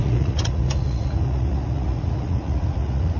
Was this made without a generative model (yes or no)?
no